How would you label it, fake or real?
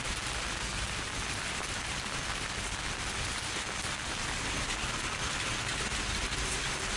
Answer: real